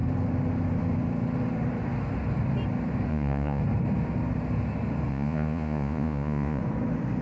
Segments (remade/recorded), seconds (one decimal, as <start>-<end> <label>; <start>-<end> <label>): 0.0-3.1 recorded; 3.1-3.6 remade; 3.6-5.1 recorded; 5.1-6.6 remade; 6.6-7.2 recorded